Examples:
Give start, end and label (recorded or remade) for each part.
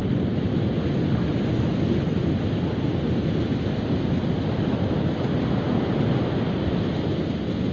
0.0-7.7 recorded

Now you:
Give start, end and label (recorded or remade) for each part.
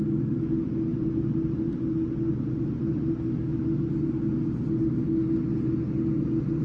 0.0-6.6 recorded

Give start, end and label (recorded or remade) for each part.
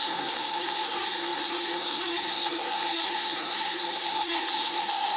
0.0-5.2 remade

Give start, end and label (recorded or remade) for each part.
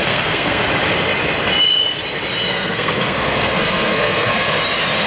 0.0-0.6 remade; 0.6-2.5 recorded; 2.5-4.5 remade; 4.5-5.1 recorded